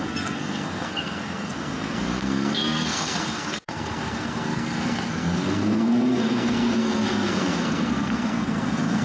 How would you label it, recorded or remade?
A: remade